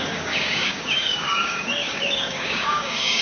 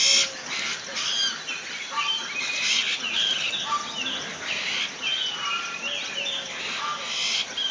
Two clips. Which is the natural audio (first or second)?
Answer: second